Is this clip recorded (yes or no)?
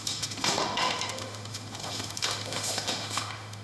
no